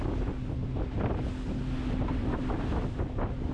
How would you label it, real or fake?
real